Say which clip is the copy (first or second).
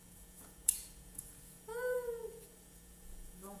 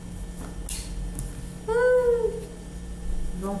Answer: first